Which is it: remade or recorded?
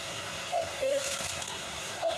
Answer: remade